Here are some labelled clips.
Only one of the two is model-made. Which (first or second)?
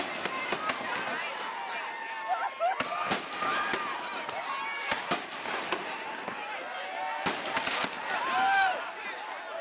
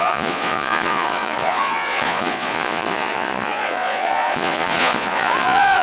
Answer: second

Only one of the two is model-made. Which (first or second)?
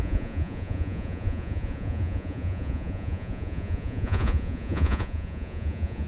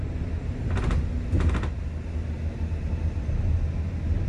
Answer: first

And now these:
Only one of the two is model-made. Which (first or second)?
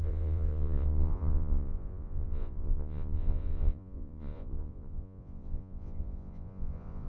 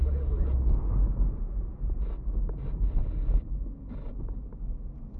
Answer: first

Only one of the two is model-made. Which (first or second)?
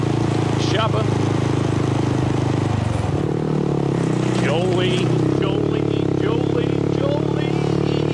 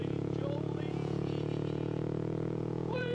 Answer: second